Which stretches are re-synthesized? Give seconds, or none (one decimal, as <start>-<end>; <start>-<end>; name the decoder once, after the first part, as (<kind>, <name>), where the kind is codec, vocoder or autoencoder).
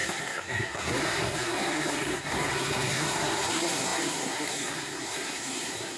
0.0-6.0 (codec, SNAC)